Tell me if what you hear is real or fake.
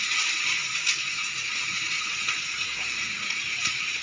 fake